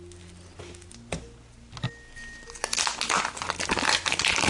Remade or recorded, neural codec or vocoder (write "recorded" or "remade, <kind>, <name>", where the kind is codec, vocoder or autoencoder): recorded